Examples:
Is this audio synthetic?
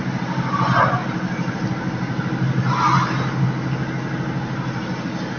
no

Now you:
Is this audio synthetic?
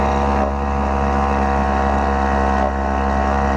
no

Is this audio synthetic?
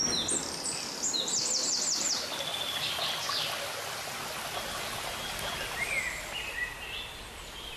no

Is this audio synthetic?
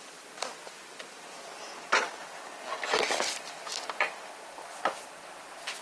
no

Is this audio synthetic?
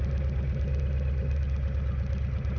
no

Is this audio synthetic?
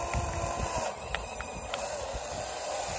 no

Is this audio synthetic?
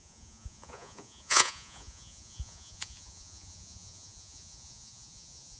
yes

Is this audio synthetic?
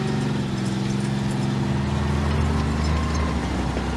no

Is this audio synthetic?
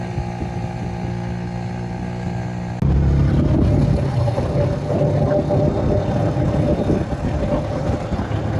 no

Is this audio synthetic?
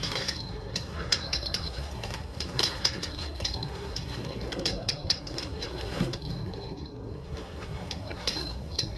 yes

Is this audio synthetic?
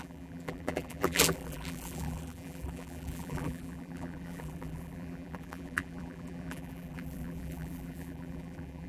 yes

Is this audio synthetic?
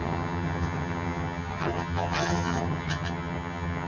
yes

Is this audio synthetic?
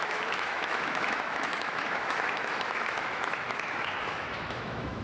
yes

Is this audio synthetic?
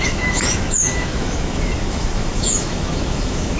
yes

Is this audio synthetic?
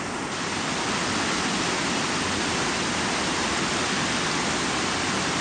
no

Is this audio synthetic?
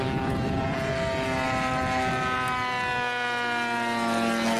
no